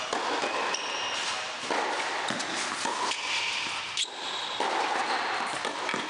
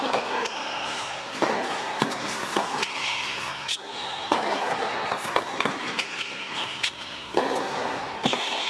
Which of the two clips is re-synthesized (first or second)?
second